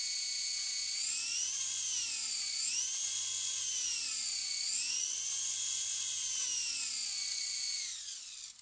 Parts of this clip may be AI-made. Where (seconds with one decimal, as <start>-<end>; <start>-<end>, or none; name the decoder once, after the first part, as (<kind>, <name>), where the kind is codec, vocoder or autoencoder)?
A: 4.4-5.3 (vocoder, Vocos); 7.0-8.2

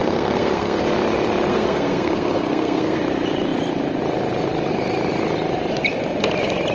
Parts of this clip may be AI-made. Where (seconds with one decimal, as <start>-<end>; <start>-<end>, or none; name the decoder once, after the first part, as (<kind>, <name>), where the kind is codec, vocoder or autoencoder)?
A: 0.0-0.8 (codec, SNAC); 1.5-3.0